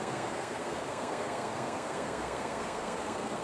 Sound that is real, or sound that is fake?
fake